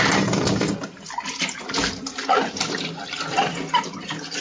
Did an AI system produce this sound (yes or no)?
no